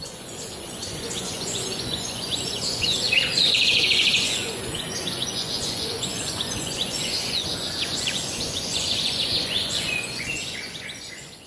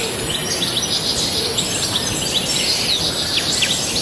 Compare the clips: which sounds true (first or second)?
second